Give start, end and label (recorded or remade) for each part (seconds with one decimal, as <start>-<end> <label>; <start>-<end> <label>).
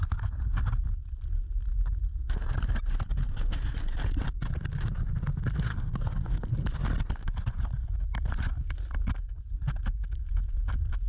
0.0-5.7 recorded; 5.7-6.5 remade; 6.5-11.1 recorded